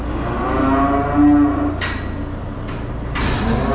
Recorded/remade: recorded